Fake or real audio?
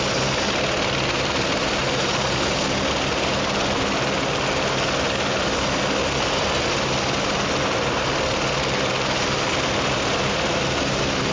real